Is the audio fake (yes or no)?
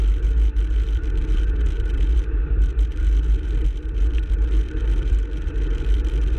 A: no